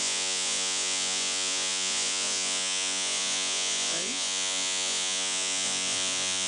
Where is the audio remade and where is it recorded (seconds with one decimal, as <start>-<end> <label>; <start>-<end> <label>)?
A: 0.0-6.5 remade